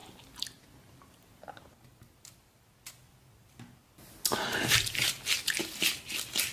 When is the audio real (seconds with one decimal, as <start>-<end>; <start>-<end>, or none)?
0.0-6.5